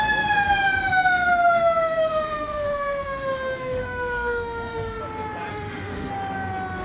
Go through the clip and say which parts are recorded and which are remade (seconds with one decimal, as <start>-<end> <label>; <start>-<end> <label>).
0.0-0.9 recorded; 0.9-5.0 remade; 5.0-5.5 recorded; 5.5-6.1 remade; 6.1-6.8 recorded